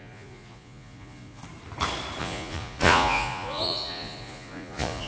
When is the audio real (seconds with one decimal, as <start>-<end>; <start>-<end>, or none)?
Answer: 1.4-2.2